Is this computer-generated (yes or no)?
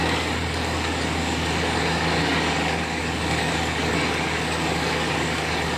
yes